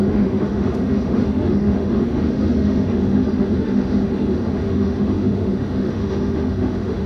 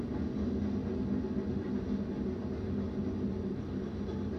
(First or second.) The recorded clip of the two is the second